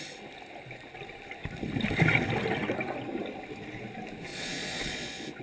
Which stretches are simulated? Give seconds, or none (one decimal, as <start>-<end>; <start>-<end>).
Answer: 4.3-5.4